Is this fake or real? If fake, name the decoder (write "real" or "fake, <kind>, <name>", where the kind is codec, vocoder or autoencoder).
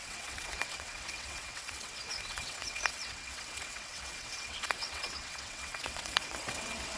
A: fake, vocoder, WaveNeXt